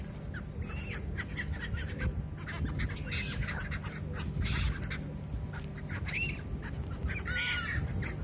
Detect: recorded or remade recorded